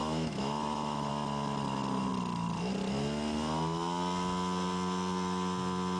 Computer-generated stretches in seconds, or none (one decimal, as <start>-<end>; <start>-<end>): 0.0-1.1